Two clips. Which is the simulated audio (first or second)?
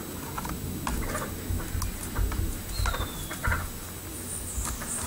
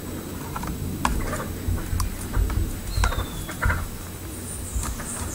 second